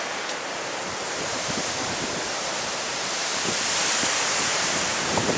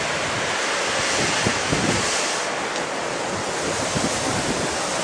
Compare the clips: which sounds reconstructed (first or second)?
first